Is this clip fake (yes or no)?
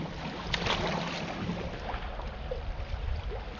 no